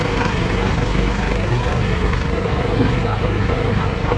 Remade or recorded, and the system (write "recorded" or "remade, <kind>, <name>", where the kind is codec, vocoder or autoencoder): remade, codec, SNAC